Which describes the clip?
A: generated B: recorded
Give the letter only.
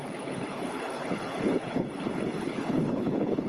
A